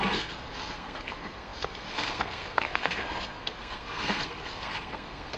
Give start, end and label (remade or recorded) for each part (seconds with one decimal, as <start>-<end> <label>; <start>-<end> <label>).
0.0-5.4 remade